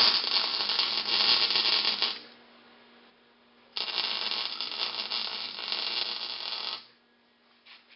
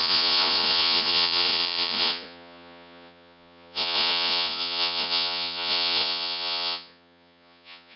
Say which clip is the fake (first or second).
second